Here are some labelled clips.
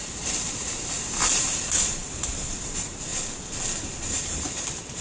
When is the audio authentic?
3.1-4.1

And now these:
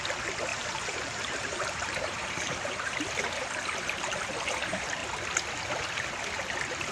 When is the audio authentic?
0.0-0.5; 3.3-6.9

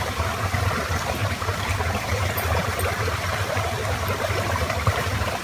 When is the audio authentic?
1.2-2.3

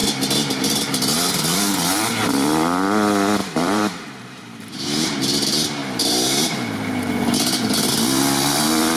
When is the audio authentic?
0.0-3.4; 5.2-5.8; 7.1-9.0

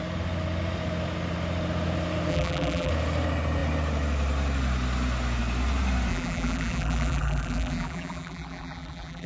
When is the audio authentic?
0.0-2.3; 2.9-6.1

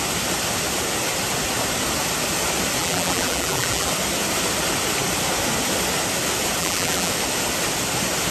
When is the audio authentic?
0.0-2.8; 3.9-6.6; 7.1-8.3